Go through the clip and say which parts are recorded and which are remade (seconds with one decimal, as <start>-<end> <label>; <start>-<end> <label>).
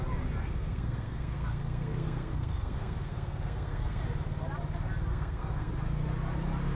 0.0-0.4 recorded; 0.4-4.0 remade; 4.0-5.1 recorded; 5.1-5.7 remade; 5.7-6.7 recorded